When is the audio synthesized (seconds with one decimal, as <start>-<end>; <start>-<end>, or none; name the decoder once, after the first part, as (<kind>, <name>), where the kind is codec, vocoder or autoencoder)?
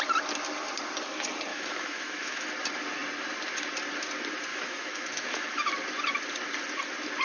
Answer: 1.5-2.5 (autoencoder, DAC-VAE); 4.5-5.7